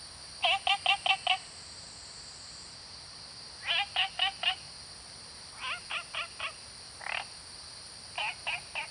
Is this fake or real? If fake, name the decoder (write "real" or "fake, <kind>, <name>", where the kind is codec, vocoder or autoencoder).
real